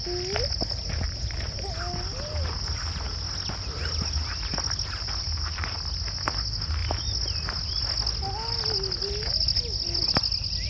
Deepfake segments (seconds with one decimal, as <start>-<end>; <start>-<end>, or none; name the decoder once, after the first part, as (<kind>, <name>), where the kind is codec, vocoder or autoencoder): none